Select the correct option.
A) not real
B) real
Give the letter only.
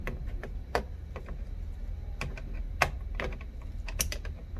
B